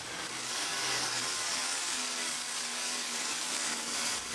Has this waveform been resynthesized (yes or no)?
yes